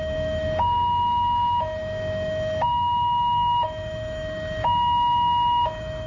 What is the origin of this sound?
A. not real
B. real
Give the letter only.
A